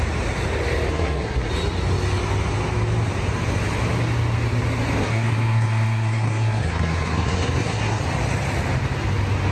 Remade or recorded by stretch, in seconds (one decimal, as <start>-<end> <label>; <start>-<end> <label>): 0.0-0.9 recorded; 0.9-1.5 remade; 1.5-5.0 recorded; 5.0-8.0 remade; 8.0-9.5 recorded